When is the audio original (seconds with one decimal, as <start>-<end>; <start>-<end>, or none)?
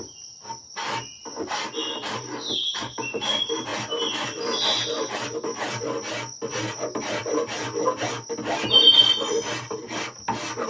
0.0-10.7